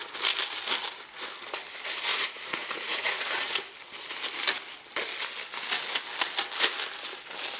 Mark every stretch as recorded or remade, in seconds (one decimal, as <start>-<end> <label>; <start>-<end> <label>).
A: 0.0-2.1 recorded; 2.1-3.6 remade; 3.6-7.6 recorded